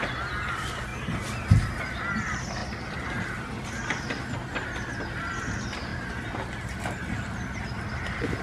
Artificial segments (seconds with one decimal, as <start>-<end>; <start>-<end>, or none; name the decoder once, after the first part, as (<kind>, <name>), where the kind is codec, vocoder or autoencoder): 5.9-8.4 (vocoder, BigVGAN v2)